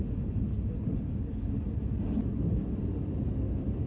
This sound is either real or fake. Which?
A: real